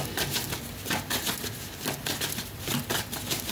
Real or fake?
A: real